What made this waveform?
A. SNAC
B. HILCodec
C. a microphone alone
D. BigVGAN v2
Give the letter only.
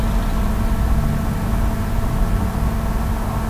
C